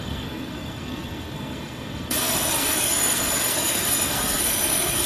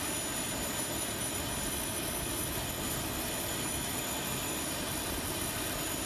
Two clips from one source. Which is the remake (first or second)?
first